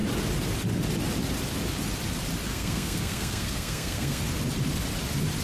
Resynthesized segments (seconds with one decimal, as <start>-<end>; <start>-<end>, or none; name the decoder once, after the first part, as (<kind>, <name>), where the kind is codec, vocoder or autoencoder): 2.5-4.2 (codec, SNAC)